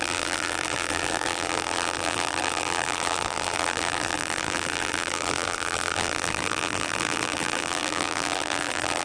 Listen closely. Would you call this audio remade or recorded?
remade